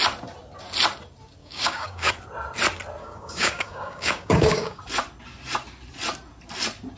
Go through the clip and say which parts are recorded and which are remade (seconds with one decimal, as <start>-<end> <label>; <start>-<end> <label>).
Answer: 0.0-1.4 recorded; 1.4-2.1 remade; 2.1-3.0 recorded; 3.0-4.8 remade; 4.8-7.0 recorded